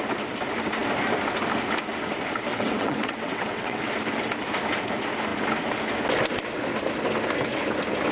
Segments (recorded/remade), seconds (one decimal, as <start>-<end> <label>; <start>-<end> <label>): 0.0-2.5 recorded; 2.5-3.8 remade; 3.8-8.1 recorded